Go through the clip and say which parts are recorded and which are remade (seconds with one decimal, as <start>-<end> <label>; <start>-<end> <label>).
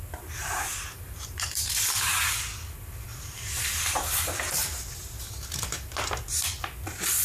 0.0-0.4 recorded; 0.4-2.1 remade; 2.1-3.1 recorded; 3.1-4.6 remade; 4.6-7.2 recorded